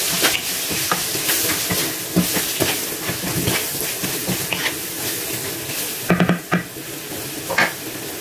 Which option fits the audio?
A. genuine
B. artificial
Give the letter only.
A